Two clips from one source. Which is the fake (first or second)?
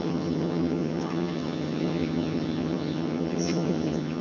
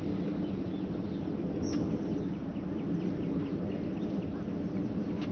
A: first